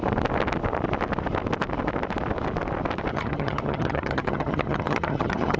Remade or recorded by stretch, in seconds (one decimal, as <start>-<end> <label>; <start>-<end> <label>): 0.0-3.1 recorded; 3.1-5.6 remade